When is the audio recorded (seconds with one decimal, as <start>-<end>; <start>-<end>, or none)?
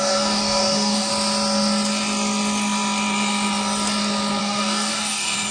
1.1-4.4